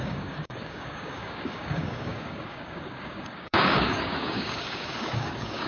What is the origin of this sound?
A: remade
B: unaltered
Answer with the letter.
A